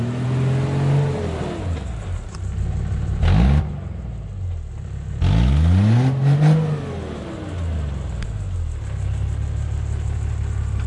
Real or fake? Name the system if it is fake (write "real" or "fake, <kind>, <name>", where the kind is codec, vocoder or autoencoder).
real